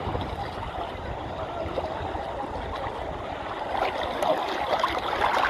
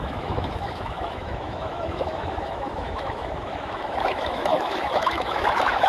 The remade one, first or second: second